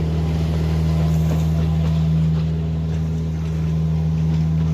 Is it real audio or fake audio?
real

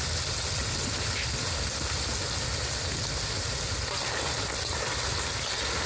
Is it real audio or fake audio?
real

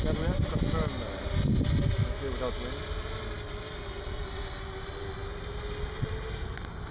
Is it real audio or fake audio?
real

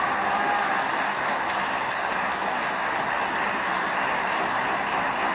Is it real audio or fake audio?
real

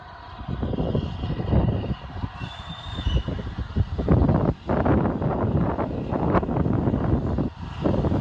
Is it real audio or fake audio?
real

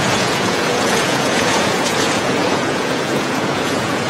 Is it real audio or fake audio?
fake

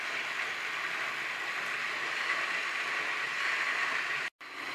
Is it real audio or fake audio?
real